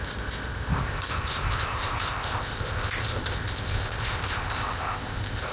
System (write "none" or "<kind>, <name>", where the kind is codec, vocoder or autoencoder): codec, ZipCodec